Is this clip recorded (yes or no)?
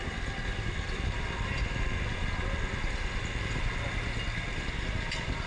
yes